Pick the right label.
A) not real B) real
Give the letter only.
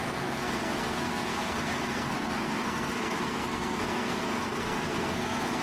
A